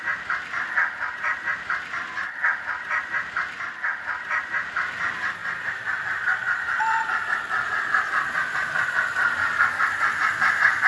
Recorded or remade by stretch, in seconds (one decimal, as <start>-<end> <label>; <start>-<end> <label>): 0.0-10.9 recorded